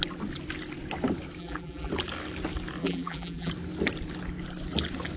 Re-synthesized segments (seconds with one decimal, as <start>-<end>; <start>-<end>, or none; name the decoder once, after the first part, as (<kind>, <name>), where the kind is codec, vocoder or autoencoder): 1.4-1.9 (vocoder, BigVGAN v2); 2.8-3.5